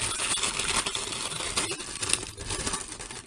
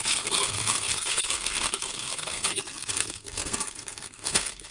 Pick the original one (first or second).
first